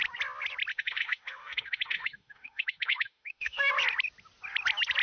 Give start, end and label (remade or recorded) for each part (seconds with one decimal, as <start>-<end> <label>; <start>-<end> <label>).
0.0-0.7 recorded; 0.7-3.7 remade; 3.7-5.0 recorded